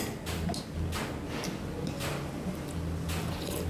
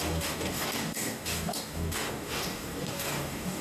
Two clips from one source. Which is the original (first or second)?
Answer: first